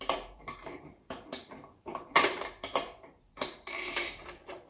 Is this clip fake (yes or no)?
yes